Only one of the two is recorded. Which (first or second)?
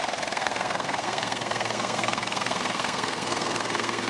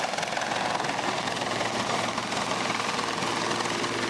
second